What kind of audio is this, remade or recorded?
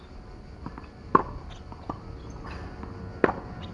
recorded